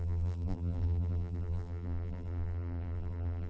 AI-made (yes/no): yes